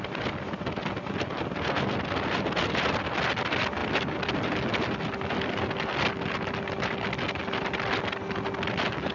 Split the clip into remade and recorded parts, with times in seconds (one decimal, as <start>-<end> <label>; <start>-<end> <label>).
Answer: 0.0-9.1 recorded